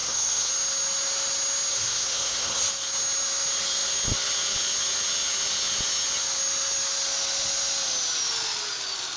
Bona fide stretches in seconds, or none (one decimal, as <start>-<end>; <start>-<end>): 0.5-1.7; 2.7-9.2